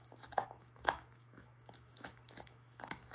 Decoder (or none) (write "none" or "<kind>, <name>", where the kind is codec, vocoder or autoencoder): autoencoder, DAC-VAE